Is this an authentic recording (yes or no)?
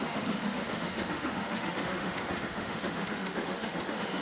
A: no